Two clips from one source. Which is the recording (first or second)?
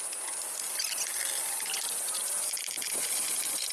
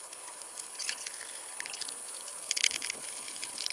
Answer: first